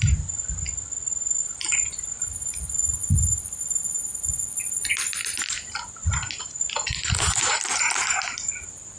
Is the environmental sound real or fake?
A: real